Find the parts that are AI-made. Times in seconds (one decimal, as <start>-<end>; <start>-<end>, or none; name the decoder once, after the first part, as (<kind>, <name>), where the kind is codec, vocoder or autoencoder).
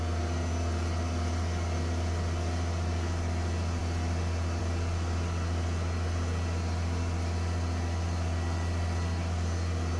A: none